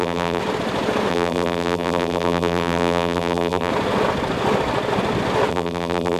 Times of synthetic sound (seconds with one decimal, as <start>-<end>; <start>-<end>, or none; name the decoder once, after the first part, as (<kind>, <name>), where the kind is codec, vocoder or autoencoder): 0.0-0.4 (vocoder, BigVGAN v2); 1.1-3.7; 5.5-6.2